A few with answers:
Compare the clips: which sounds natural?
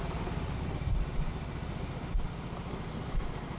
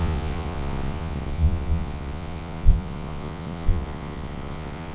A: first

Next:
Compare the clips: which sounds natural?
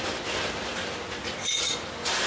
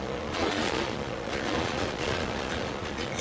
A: first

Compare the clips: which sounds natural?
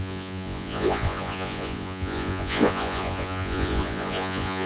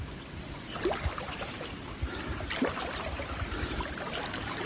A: second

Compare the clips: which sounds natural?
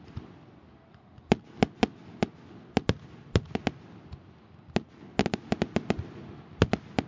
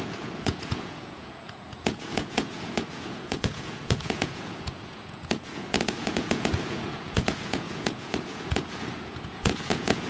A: first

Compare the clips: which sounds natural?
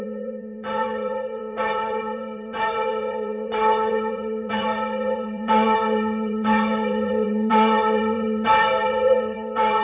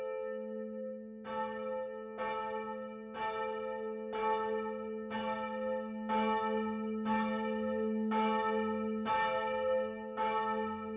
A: second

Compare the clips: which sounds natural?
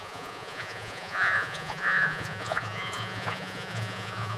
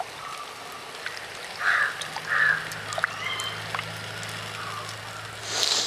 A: second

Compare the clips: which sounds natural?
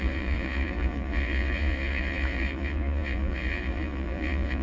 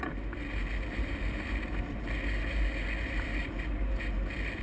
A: second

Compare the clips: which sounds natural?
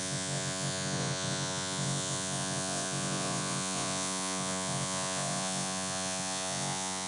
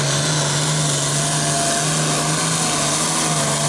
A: second